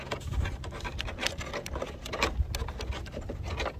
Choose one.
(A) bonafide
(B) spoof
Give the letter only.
A